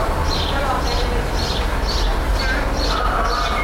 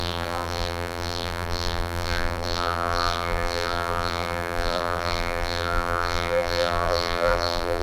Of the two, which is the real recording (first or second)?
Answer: first